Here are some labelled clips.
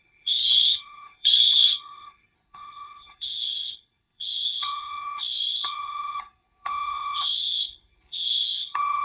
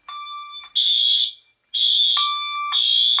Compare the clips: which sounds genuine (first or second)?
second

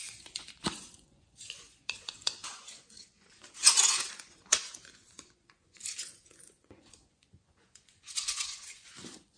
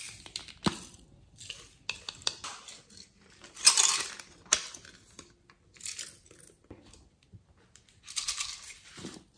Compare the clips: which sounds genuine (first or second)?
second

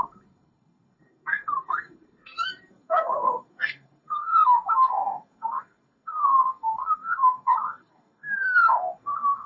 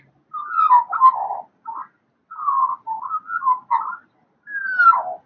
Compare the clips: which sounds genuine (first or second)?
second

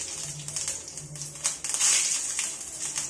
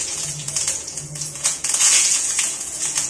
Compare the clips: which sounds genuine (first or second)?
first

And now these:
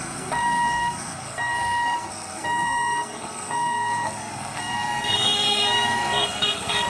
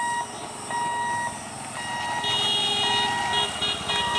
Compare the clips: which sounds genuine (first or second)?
second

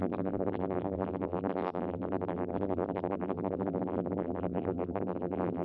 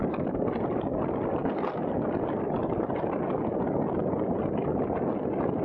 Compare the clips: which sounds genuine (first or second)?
second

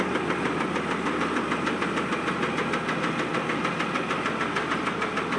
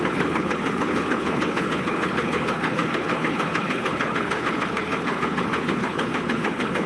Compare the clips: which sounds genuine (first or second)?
first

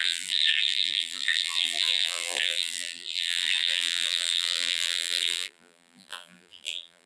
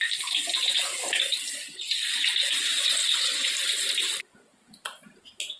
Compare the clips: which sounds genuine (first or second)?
second